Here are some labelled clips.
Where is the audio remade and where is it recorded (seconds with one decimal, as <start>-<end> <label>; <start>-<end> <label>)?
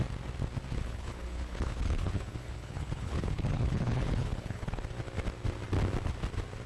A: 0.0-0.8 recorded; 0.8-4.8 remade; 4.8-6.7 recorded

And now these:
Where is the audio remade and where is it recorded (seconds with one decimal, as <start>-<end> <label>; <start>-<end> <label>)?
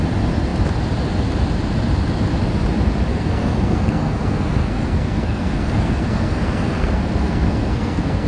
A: 0.0-3.1 recorded; 3.1-8.3 remade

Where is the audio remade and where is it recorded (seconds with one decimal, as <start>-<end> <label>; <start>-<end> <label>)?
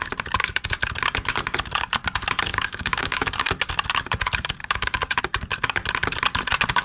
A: 0.0-2.5 recorded; 2.5-3.5 remade; 3.5-4.6 recorded; 4.6-5.2 remade; 5.2-6.8 recorded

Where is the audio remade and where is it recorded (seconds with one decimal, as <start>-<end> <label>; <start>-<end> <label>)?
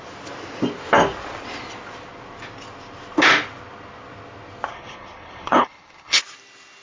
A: 0.0-4.7 recorded; 4.7-6.2 remade; 6.2-6.8 recorded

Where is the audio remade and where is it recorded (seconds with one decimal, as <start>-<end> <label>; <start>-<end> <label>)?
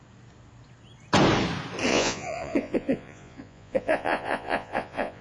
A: 0.0-1.9 recorded; 1.9-5.2 remade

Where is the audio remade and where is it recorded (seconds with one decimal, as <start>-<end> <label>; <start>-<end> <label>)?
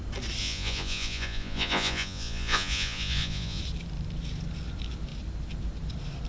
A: 0.0-0.4 recorded; 0.4-3.6 remade; 3.6-6.3 recorded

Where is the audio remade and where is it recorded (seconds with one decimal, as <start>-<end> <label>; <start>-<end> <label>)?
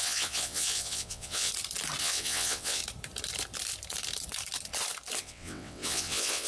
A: 0.0-1.5 remade; 1.5-2.0 recorded; 2.0-2.8 remade; 2.8-5.2 recorded; 5.2-6.5 remade